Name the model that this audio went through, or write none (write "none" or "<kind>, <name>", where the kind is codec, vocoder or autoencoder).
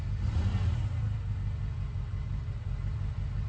none